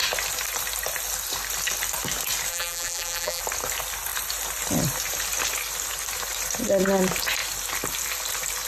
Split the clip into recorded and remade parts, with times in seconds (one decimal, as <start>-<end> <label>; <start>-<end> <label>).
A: 0.0-2.5 recorded; 2.5-3.4 remade; 3.4-8.7 recorded